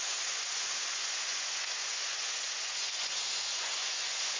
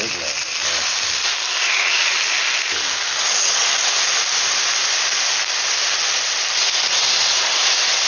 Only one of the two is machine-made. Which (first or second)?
first